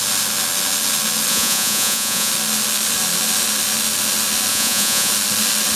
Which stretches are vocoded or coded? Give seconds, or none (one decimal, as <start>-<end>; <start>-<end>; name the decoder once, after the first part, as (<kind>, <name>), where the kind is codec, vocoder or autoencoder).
1.3-2.3 (vocoder, Vocos); 4.5-5.1